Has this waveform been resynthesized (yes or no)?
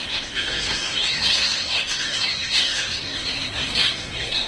yes